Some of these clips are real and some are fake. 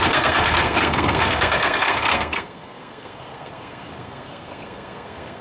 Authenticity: fake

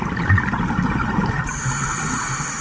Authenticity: real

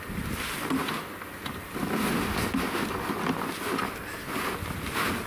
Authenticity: real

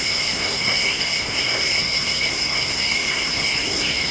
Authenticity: fake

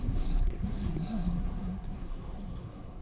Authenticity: fake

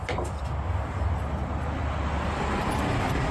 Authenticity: real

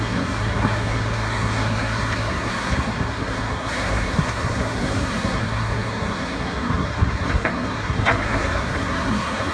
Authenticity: fake